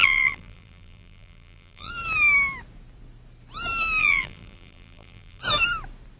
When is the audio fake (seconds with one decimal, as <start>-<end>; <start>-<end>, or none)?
0.0-1.9; 4.0-5.4

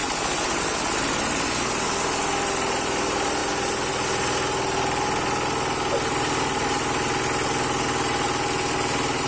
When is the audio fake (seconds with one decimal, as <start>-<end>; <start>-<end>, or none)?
3.4-3.9

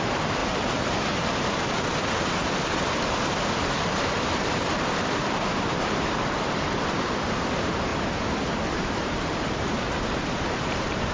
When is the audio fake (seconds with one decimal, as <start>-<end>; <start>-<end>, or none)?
0.0-0.4; 2.1-11.1

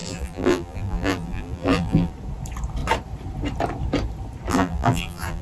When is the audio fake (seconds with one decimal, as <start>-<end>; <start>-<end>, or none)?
0.0-2.1; 4.5-5.4

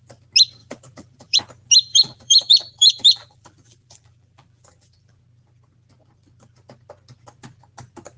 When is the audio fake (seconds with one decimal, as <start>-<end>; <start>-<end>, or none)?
0.6-1.4; 1.9-5.2

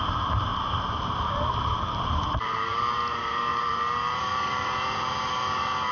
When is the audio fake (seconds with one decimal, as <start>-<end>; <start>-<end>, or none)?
0.0-0.5; 1.2-5.9

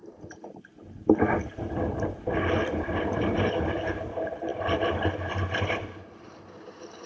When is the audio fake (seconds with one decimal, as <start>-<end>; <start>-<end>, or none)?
0.0-0.7; 1.9-4.5; 6.1-7.1